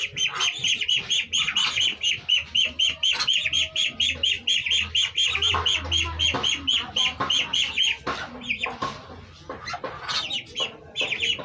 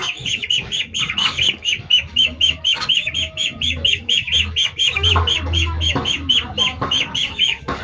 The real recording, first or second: first